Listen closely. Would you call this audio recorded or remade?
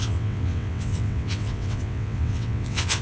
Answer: remade